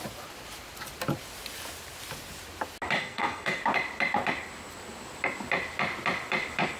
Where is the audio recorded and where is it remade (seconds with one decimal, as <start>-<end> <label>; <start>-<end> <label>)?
0.0-3.0 recorded; 3.0-3.6 remade; 3.6-6.8 recorded